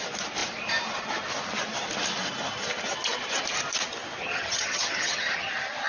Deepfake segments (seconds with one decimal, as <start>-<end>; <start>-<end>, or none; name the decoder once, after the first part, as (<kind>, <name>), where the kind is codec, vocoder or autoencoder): 4.2-5.5 (vocoder, HiFi-GAN)